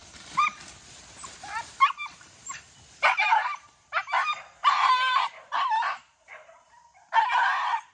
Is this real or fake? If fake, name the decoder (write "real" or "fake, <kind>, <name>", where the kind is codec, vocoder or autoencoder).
fake, vocoder, BigVGAN v2